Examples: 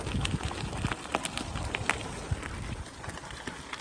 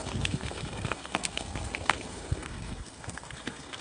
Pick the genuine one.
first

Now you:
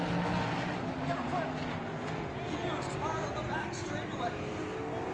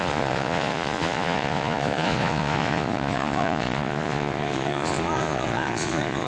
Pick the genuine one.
first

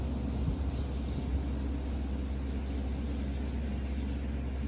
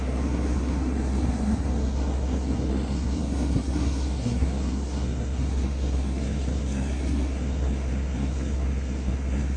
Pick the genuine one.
first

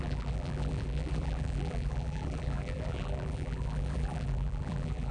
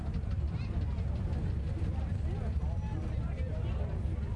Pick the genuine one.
second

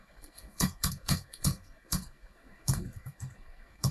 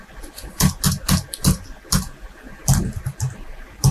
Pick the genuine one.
second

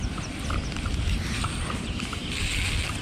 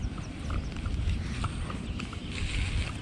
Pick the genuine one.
first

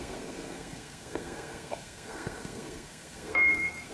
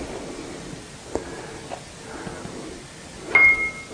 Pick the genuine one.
second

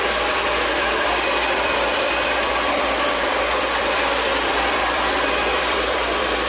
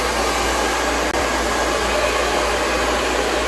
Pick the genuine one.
second